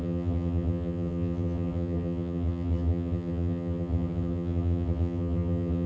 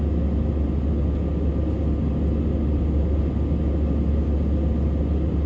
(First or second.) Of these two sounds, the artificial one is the first